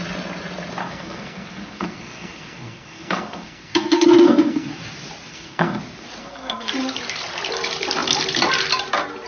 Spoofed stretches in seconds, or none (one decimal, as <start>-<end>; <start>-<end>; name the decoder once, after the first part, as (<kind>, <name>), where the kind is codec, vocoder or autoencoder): 0.8-4.8 (codec, SNAC); 5.3-5.8; 6.2-6.7